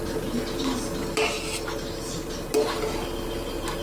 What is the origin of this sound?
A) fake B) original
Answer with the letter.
B